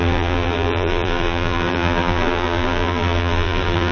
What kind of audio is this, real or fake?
fake